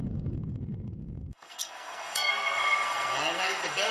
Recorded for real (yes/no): no